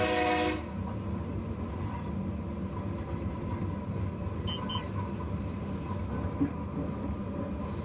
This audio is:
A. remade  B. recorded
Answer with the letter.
B